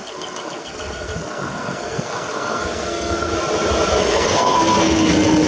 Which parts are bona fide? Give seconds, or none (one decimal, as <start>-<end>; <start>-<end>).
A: 3.3-4.0